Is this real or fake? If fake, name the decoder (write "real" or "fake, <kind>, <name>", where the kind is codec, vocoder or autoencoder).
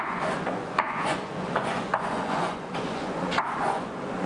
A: fake, vocoder, Vocos